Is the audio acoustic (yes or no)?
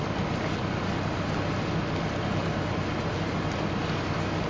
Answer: yes